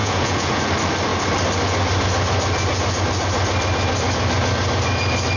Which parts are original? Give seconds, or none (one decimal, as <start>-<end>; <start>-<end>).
0.6-5.4